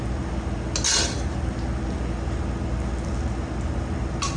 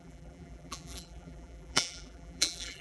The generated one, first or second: second